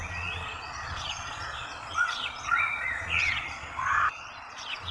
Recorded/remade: remade